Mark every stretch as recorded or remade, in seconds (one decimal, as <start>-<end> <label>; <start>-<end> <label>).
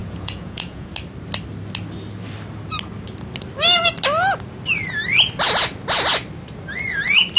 0.0-0.9 remade; 0.9-7.4 recorded